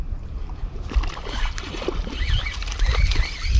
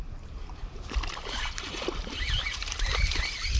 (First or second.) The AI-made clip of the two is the second